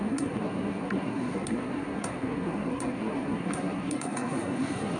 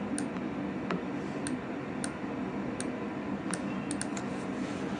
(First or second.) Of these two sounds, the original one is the second